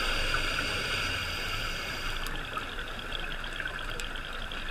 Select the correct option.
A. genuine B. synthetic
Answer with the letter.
A